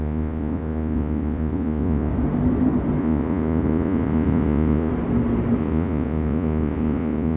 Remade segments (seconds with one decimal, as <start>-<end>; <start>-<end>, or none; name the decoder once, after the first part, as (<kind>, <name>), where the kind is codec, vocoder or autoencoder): 0.0-2.1 (vocoder, Vocos); 3.0-4.9; 5.6-7.4